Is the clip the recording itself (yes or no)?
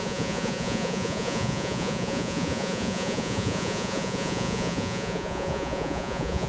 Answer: no